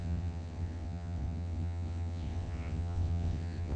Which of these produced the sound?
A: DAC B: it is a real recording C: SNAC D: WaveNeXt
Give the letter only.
D